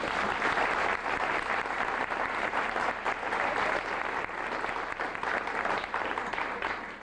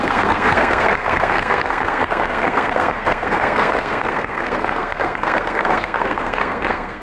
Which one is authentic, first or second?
first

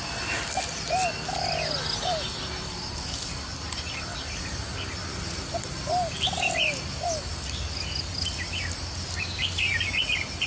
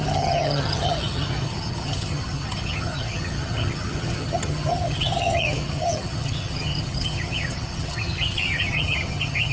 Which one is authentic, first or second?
first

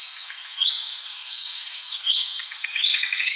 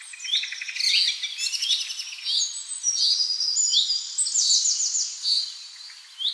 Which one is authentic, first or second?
second